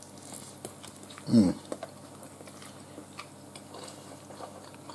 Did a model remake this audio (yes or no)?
no